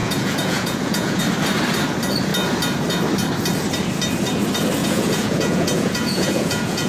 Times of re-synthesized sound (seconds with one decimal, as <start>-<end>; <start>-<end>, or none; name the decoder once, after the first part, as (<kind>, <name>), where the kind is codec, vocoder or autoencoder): 0.0-1.2 (vocoder, Vocos); 4.8-6.9

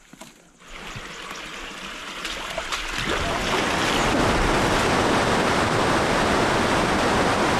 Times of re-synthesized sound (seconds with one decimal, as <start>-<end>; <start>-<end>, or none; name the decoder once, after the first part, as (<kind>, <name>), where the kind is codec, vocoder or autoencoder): none

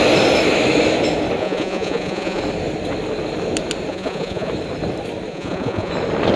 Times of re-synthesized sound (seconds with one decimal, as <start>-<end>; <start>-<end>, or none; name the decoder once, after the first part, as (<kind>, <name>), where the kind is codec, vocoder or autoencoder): 1.4-2.4 (vocoder, Vocos); 3.9-4.5; 5.3-5.9

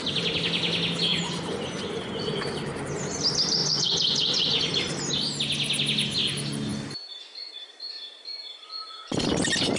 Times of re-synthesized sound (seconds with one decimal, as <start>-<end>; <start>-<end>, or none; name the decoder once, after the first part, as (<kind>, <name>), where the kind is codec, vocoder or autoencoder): 1.1-2.2 (vocoder, Vocos); 3.6-4.6